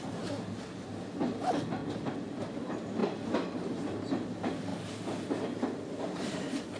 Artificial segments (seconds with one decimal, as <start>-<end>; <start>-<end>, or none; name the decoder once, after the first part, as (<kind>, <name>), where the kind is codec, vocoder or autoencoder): none